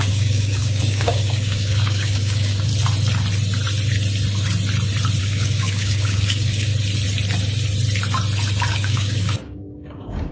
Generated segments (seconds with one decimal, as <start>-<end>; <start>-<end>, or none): 0.0-2.7; 5.2-6.7; 8.7-10.3